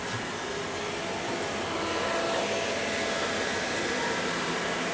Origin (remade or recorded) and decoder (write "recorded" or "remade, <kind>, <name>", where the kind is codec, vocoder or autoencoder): recorded